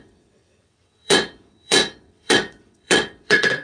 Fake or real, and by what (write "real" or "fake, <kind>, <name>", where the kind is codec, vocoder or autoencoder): fake, vocoder, WaveNeXt